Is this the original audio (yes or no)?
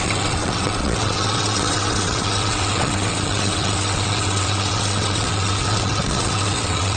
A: no